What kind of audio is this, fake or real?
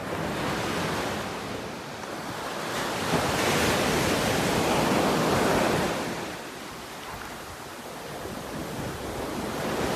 real